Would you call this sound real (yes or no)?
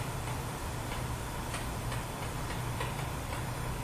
no